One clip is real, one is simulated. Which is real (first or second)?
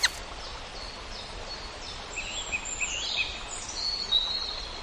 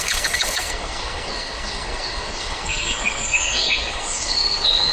first